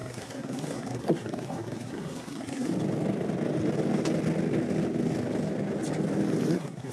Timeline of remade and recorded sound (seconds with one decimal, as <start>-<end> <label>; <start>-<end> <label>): 0.0-2.7 remade; 2.7-6.5 recorded; 6.5-6.9 remade